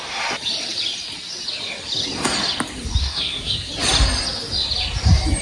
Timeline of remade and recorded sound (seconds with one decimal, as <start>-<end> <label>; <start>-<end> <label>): 0.0-3.0 recorded; 3.0-3.7 remade; 3.7-5.4 recorded